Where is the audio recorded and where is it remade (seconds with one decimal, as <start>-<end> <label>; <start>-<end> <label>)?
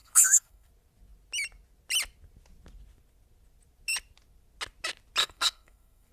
0.0-0.7 remade; 0.7-5.2 recorded; 5.2-6.1 remade